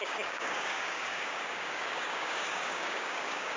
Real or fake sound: fake